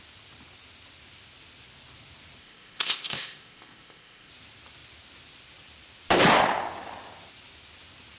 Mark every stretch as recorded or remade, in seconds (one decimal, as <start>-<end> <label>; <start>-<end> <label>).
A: 0.0-2.4 recorded; 2.4-4.3 remade; 4.3-8.2 recorded